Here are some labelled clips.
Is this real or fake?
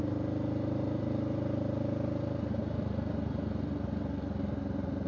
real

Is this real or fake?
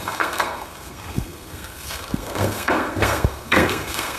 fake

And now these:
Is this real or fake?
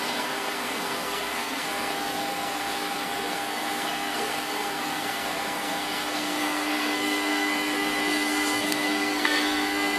fake